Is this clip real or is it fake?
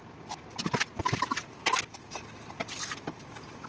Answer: real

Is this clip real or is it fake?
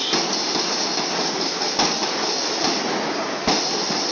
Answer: real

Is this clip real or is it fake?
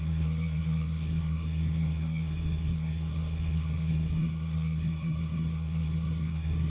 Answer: fake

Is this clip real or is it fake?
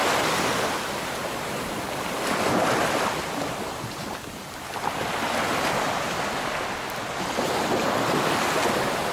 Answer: real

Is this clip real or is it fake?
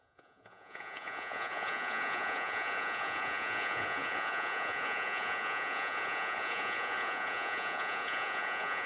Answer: fake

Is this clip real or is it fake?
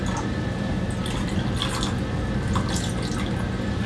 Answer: real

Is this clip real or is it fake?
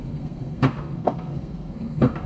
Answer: fake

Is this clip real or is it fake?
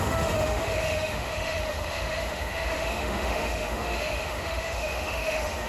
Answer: fake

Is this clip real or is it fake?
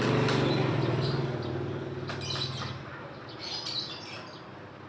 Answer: real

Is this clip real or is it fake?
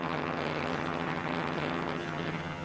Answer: fake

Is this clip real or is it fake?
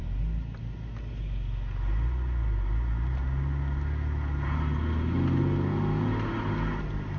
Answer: real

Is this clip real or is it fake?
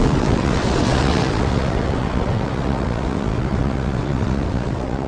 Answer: fake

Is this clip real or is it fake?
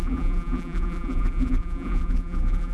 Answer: fake